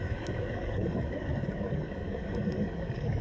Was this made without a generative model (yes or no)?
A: no